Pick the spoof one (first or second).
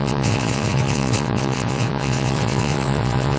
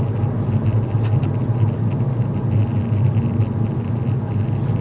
first